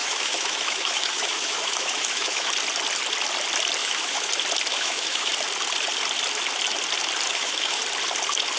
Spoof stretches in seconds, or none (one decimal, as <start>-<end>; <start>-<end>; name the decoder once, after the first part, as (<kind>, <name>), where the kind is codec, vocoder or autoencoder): 0.0-2.5 (autoencoder, DAC-VAE); 3.8-4.3; 4.7-5.3; 7.3-7.8